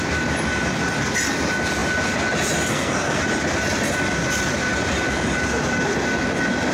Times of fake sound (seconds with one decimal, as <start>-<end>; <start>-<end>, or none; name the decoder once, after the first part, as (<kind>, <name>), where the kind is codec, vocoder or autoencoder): 2.7-3.2 (codec, SNAC)